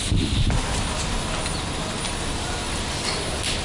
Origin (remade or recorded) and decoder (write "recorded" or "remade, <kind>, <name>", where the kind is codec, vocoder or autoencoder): recorded